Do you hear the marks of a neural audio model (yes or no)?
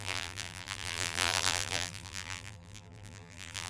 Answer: yes